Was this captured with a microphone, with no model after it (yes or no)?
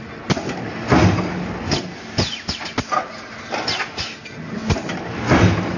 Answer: yes